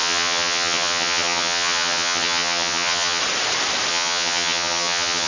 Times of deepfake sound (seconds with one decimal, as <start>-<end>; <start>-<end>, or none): 0.0-3.2; 3.9-5.3